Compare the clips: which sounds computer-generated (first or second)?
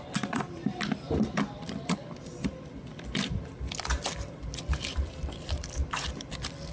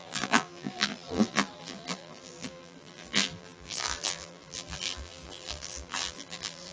second